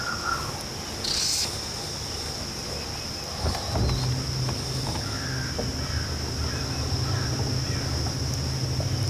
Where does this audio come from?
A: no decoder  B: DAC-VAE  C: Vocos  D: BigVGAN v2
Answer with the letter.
A